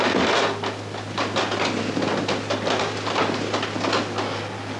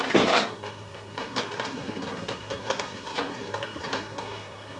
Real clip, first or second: first